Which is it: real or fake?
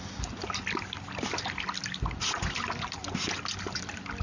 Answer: real